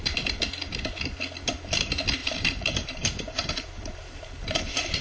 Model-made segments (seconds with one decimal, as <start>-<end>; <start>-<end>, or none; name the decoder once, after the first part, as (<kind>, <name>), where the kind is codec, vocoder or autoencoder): 2.2-5.0 (vocoder, BigVGAN v2)